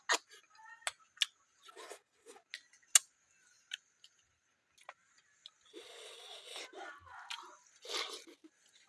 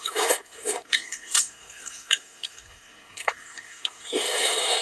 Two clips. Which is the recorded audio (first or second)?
first